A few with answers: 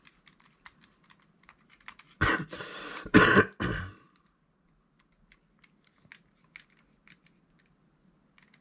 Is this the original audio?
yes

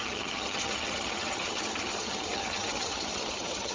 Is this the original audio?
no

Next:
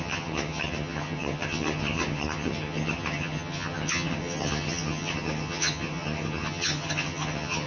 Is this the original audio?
no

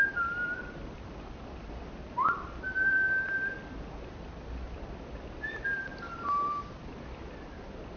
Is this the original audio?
yes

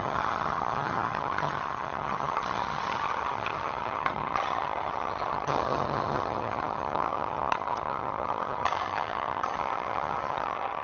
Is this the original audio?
no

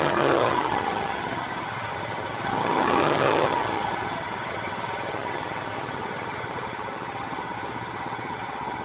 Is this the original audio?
no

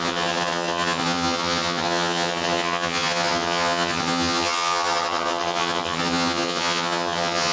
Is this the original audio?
no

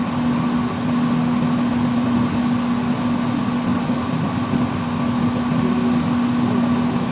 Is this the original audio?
yes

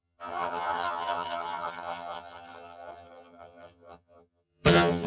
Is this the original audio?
no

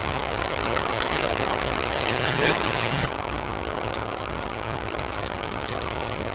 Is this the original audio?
no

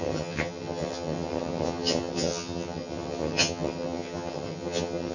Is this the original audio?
no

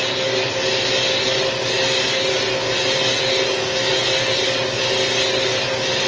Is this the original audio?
yes